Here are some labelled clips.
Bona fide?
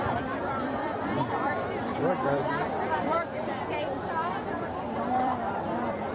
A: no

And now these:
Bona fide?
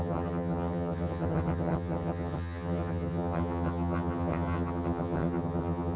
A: no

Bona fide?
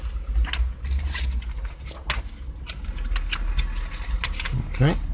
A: yes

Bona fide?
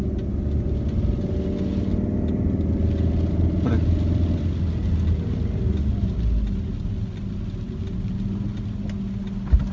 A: yes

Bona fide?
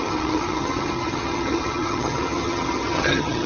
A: no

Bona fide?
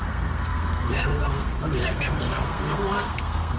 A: no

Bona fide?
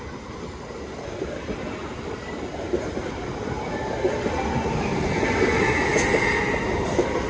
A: yes